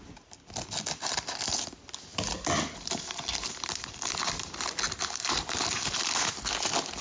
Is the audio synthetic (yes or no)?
no